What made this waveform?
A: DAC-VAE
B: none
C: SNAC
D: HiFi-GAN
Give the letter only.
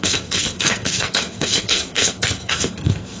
C